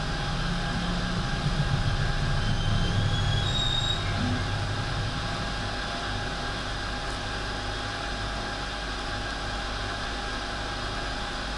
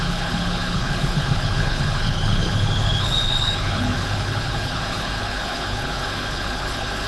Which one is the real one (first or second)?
first